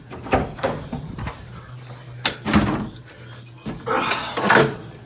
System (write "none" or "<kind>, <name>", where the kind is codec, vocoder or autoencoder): none